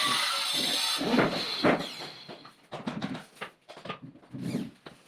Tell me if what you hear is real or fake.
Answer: real